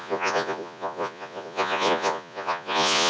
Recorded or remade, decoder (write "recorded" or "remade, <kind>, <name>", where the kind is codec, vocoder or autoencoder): remade, vocoder, Vocos